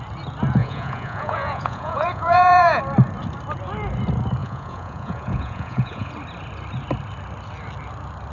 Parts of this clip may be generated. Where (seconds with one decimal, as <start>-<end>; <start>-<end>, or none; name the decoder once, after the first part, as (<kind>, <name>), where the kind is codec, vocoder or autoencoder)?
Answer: 0.6-2.8 (vocoder, Vocos); 4.4-6.1

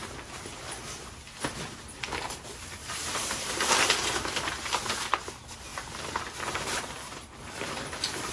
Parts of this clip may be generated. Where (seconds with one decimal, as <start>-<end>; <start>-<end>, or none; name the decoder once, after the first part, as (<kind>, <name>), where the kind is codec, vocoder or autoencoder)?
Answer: 2.8-3.7 (vocoder, BigVGAN v2)